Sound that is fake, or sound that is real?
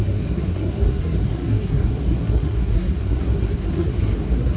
fake